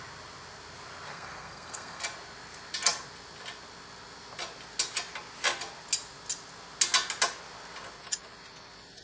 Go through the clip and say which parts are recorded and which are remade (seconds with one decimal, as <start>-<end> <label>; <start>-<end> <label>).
0.0-1.1 recorded; 1.1-2.0 remade; 2.0-9.0 recorded